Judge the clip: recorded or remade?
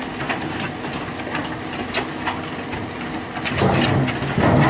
recorded